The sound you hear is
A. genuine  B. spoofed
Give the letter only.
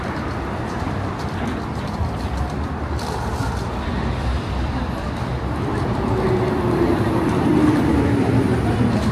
B